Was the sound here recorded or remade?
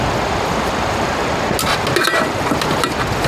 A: recorded